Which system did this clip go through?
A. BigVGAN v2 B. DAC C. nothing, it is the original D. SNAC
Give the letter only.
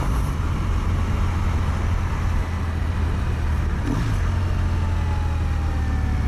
C